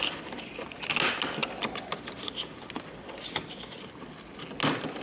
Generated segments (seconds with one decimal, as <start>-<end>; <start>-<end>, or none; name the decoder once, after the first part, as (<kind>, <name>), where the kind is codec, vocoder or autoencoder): none